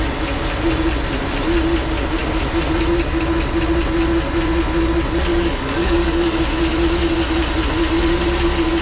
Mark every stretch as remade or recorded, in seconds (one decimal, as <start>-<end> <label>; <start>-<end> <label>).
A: 0.0-5.3 recorded; 5.3-6.4 remade; 6.4-8.8 recorded